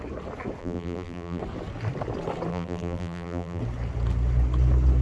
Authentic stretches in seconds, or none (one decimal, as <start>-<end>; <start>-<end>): 0.0-0.6; 1.4-2.5; 3.6-5.0